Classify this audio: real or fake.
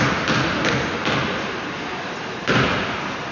real